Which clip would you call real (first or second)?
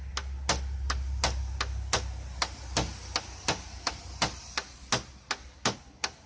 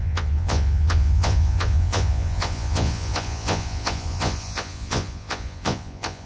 first